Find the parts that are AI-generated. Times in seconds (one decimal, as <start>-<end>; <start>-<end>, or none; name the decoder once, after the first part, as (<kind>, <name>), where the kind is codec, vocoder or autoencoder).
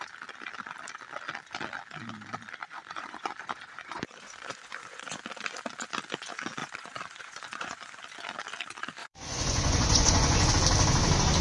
2.7-5.2 (vocoder, Vocos); 6.6-8.0; 9.0-10.5